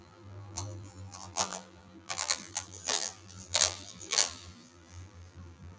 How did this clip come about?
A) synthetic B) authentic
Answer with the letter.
A